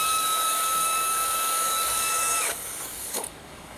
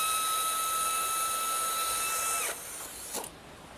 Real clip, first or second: second